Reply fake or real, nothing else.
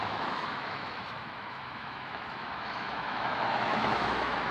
fake